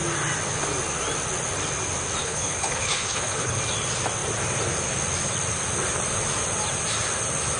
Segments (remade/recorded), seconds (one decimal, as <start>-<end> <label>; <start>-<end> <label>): 0.0-2.2 recorded; 2.2-3.6 remade; 3.6-7.6 recorded